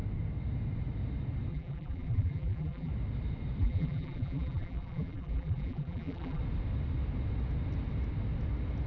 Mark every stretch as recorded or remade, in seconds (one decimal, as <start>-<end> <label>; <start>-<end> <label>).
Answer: 0.0-1.5 recorded; 1.5-2.9 remade; 2.9-3.6 recorded; 3.6-6.4 remade; 6.4-8.9 recorded